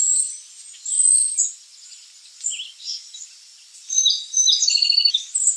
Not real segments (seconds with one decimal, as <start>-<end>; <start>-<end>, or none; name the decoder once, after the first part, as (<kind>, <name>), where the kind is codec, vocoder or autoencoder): none